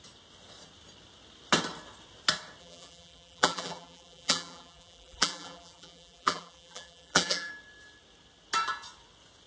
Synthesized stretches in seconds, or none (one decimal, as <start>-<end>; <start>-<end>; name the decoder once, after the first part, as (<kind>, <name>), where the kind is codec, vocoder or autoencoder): 2.6-7.5 (vocoder, BigVGAN v2)